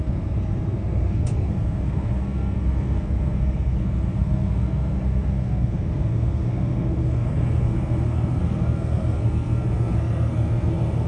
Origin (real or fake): fake